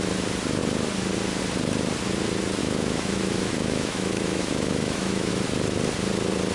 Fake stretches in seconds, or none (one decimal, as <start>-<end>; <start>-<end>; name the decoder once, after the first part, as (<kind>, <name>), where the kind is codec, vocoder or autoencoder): 2.6-5.3 (autoencoder, DAC-VAE)